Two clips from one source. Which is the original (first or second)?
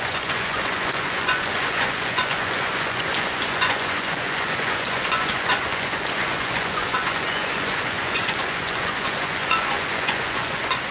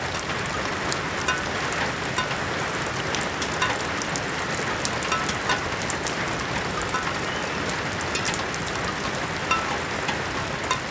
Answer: second